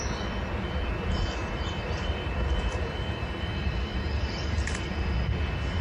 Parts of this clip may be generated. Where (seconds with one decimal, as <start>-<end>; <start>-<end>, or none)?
1.4-4.9